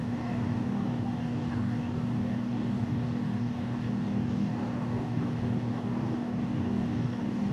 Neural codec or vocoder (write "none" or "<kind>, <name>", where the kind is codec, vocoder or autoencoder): codec, DAC